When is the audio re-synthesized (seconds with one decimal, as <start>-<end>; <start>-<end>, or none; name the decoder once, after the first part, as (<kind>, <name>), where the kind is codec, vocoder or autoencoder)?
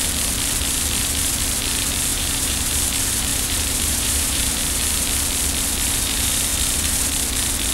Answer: 2.1-2.7 (vocoder, BigVGAN v2); 3.3-4.8